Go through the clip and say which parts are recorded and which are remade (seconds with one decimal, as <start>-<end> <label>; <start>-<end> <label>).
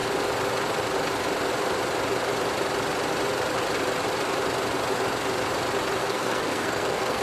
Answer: 0.0-6.0 recorded; 6.0-7.2 remade